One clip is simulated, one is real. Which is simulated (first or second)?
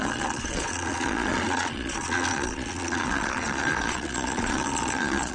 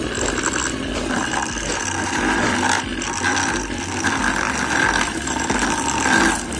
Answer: first